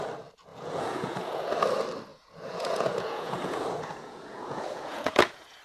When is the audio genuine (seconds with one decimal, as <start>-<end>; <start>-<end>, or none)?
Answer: 0.0-0.5; 1.5-2.1